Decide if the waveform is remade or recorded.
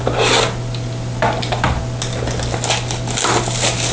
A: recorded